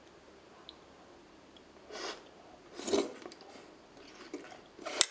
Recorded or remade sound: recorded